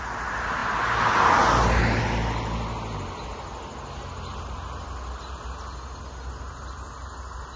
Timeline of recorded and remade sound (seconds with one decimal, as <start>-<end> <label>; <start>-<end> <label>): 0.0-7.6 recorded